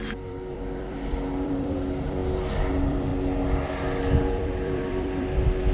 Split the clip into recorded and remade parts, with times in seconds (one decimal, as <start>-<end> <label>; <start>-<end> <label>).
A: 0.0-2.2 remade; 2.2-2.7 recorded; 2.7-3.1 remade; 3.1-4.2 recorded; 4.2-5.7 remade